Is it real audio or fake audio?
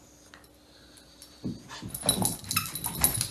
real